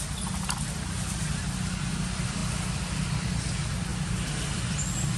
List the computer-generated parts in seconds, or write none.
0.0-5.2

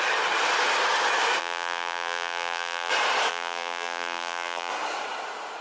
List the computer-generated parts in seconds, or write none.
1.4-2.9; 3.3-4.7

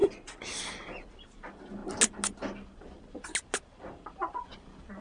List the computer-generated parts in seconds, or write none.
none